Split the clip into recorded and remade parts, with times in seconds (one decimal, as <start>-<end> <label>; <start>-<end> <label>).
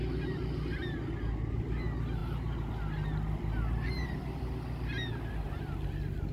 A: 0.0-2.2 recorded; 2.2-2.7 remade; 2.7-6.3 recorded